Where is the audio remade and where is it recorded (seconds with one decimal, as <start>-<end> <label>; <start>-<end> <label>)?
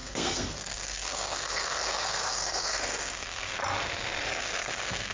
0.0-3.6 remade; 3.6-4.4 recorded; 4.4-5.1 remade